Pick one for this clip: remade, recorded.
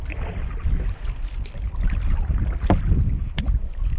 recorded